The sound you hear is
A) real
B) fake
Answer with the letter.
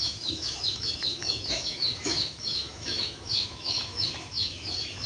B